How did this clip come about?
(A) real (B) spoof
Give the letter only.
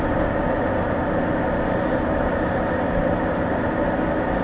A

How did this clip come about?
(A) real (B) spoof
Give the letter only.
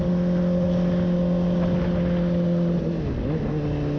A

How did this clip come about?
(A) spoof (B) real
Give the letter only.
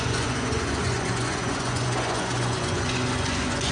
A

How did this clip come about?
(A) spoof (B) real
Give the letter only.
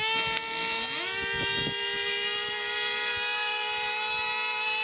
B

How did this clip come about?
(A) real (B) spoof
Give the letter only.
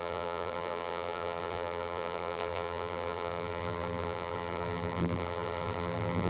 B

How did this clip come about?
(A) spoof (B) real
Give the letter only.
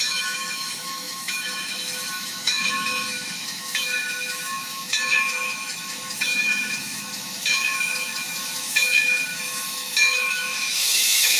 A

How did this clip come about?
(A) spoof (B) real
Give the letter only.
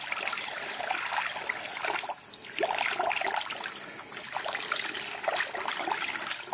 B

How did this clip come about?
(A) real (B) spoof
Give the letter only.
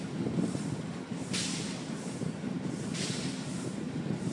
A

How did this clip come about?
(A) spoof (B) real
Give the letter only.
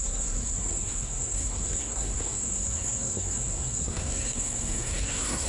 A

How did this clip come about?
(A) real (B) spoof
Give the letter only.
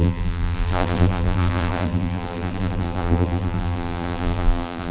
B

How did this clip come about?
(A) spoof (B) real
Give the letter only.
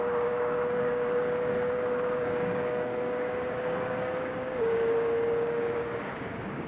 A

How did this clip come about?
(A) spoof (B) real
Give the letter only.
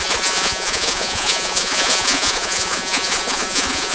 A